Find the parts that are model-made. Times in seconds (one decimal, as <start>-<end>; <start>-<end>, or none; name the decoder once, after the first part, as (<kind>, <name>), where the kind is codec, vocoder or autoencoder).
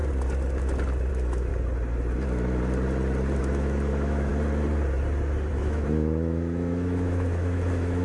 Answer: 1.1-1.5 (autoencoder, DAC-VAE); 3.4-4.3; 5.5-8.0